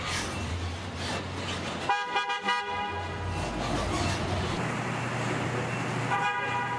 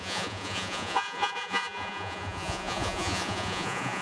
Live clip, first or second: first